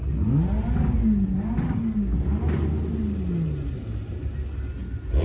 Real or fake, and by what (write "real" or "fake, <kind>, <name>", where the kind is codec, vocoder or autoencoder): real